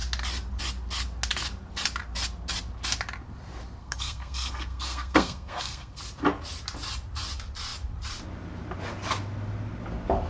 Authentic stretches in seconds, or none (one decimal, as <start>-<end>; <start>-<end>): 0.0-3.8; 6.0-10.3